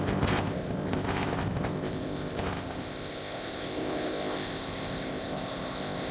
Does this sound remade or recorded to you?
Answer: remade